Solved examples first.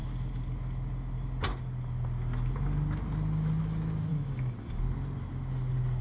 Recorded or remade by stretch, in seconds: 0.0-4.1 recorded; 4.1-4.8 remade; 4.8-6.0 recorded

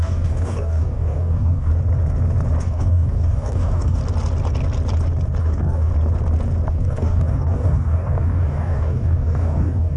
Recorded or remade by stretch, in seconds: 0.0-1.7 remade; 1.7-2.6 recorded; 2.6-4.0 remade; 4.0-5.4 recorded; 5.4-5.9 remade; 5.9-6.7 recorded; 6.7-10.0 remade

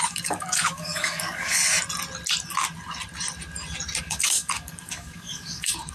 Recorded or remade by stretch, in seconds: 0.0-1.6 remade; 1.6-4.0 recorded; 4.0-5.9 remade

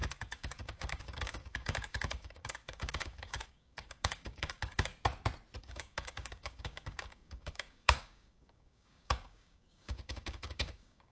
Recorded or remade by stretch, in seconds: 0.0-4.9 remade; 4.9-5.6 recorded; 5.6-11.1 remade

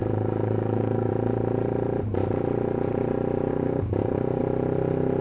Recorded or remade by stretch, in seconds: 0.0-1.1 remade; 1.1-3.5 recorded; 3.5-4.4 remade; 4.4-5.2 recorded

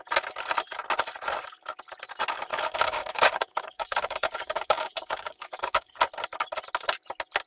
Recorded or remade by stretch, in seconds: 0.0-2.5 recorded; 2.5-6.0 remade; 6.0-7.5 recorded